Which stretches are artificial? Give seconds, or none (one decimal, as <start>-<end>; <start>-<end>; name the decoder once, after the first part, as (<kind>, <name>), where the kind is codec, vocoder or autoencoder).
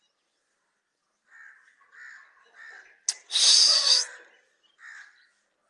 none